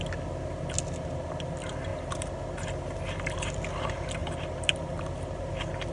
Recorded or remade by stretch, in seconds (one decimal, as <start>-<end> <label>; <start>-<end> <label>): 0.0-5.9 recorded